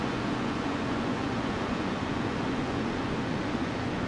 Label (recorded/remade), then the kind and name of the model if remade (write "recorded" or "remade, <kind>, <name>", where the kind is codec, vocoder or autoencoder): remade, vocoder, Vocos